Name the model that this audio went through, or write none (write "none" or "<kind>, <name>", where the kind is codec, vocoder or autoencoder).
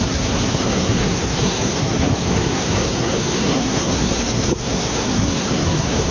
codec, SNAC